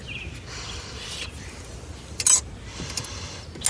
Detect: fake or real real